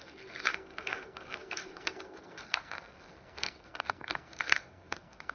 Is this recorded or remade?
remade